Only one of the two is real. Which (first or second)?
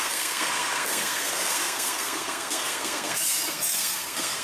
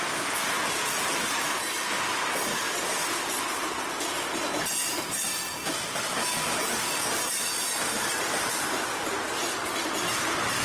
second